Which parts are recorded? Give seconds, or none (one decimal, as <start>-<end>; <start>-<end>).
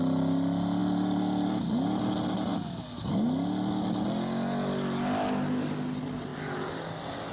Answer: 0.0-7.3